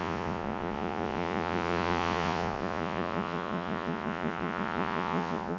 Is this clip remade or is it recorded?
remade